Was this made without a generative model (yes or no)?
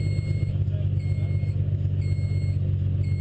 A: yes